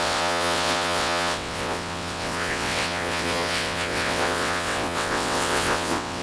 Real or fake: fake